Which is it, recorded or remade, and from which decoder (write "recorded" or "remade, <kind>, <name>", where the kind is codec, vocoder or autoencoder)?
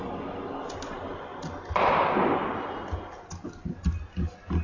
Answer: recorded